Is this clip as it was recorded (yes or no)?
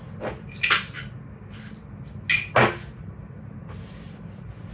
yes